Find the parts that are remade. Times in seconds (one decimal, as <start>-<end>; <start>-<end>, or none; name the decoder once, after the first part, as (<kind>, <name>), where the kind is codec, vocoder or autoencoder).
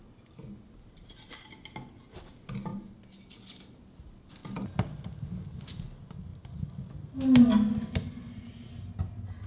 none